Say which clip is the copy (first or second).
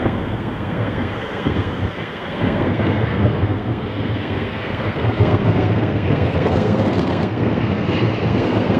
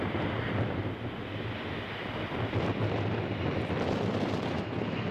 first